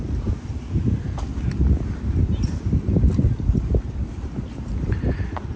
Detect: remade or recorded recorded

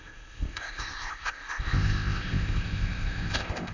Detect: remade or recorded remade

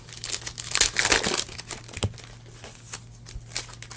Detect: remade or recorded recorded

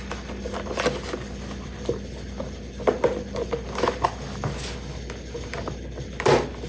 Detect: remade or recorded recorded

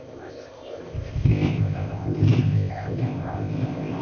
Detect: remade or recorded remade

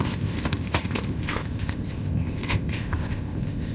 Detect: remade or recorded remade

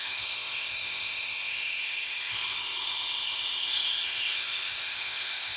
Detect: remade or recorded remade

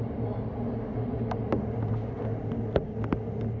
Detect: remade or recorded recorded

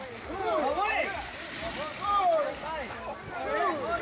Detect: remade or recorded recorded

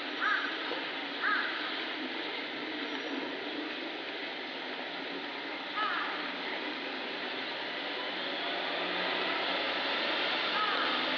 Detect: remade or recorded recorded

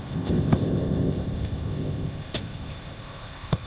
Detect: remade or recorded remade